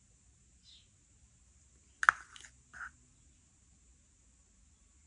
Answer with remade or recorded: recorded